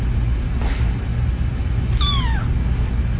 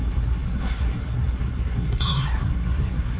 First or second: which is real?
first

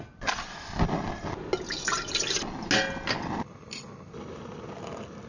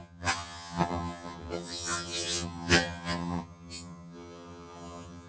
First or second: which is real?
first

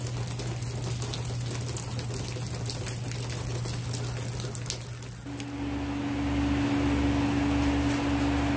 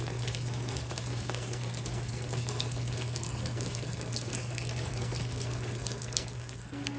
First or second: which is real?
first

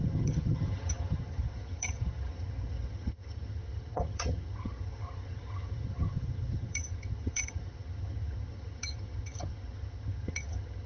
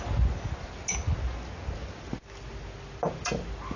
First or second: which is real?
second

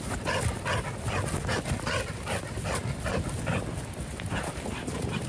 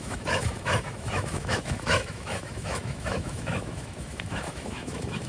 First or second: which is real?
first